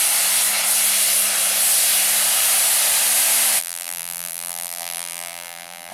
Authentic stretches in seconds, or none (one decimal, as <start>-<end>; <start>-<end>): 0.0-3.6